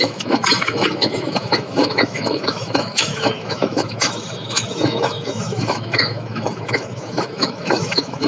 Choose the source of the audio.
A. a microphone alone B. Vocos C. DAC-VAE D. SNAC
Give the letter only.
C